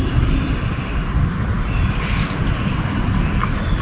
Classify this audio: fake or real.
real